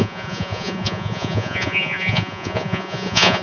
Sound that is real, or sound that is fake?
fake